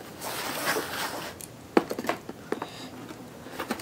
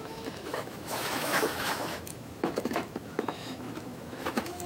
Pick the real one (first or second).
first